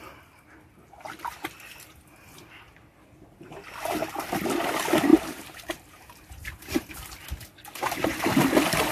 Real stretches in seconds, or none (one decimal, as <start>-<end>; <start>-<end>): 0.0-5.1; 6.9-8.9